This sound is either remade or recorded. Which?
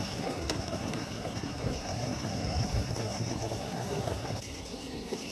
remade